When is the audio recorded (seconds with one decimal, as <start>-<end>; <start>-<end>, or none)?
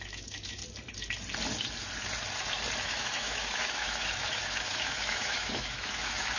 0.6-2.8